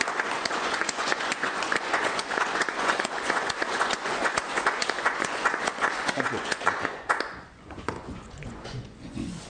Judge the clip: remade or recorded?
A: remade